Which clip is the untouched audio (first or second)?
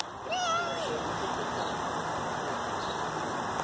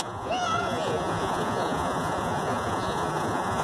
first